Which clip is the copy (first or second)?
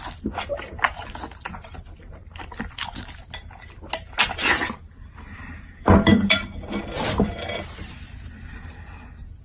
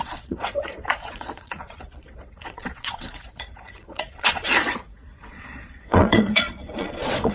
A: second